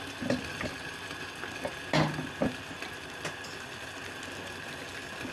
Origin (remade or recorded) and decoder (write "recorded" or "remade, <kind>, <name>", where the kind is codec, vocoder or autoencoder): recorded